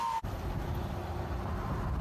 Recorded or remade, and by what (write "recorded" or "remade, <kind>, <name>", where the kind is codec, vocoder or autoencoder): recorded